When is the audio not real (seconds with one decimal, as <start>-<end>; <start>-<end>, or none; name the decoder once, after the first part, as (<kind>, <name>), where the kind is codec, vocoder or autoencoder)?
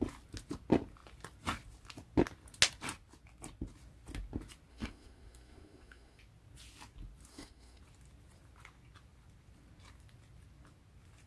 4.7-6.2 (codec, SNAC); 7.3-7.8